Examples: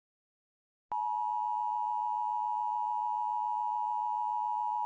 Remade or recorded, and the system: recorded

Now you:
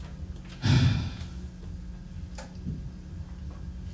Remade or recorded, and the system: recorded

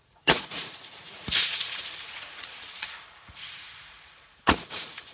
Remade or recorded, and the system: remade, vocoder, Vocos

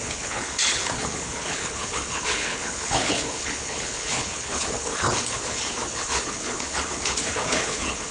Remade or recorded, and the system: remade, codec, HILCodec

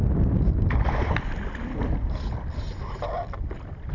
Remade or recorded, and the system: remade, vocoder, BigVGAN v2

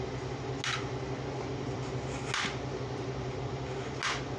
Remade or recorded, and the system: recorded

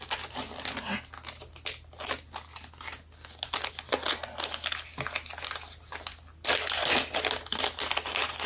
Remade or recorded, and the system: recorded